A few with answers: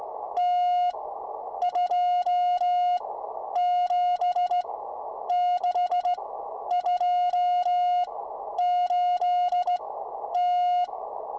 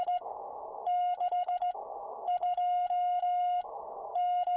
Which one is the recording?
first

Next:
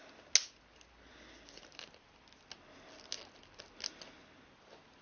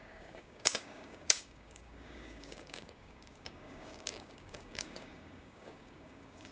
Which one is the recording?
first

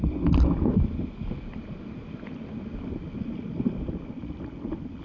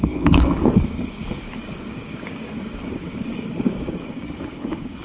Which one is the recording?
first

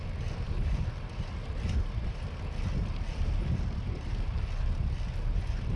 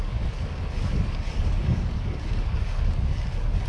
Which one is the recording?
first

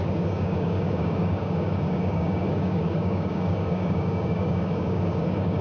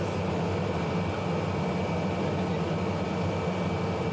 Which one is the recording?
second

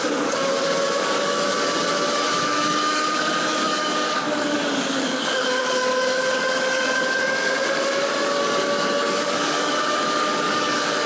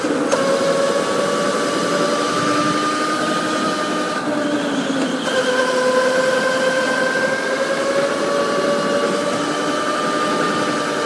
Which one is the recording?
second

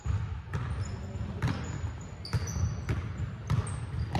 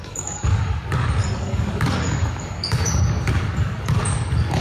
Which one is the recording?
first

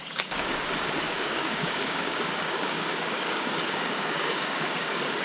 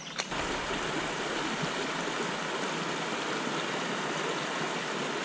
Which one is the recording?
second